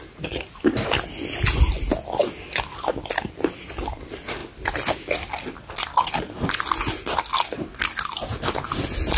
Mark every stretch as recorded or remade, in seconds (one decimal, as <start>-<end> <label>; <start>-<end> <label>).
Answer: 0.0-9.2 recorded